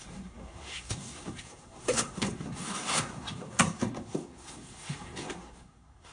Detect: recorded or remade remade